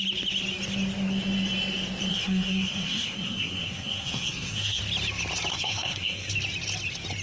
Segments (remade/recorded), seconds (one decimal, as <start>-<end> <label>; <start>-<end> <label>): 0.0-2.1 recorded; 2.1-4.8 remade; 4.8-5.5 recorded; 5.5-6.3 remade; 6.3-7.2 recorded